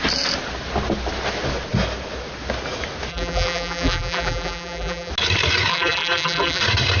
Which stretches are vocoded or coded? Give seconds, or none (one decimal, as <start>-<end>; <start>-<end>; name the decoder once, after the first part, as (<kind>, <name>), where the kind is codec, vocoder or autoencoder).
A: 3.1-5.1 (vocoder, BigVGAN v2); 5.7-6.6